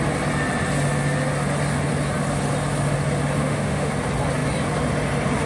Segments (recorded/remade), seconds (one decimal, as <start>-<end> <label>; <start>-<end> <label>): 0.0-3.4 recorded; 3.4-3.9 remade; 3.9-5.5 recorded